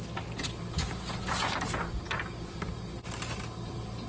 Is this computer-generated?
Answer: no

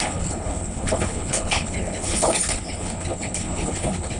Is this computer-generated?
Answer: yes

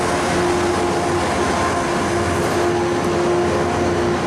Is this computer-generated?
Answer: no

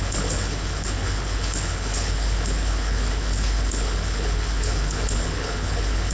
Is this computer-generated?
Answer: yes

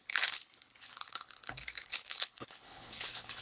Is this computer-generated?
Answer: yes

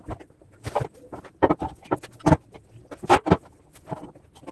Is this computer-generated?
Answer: no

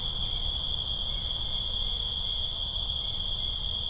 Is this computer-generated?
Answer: no